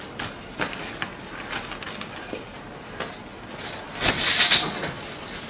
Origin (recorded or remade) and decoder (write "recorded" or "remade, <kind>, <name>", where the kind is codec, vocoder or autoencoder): recorded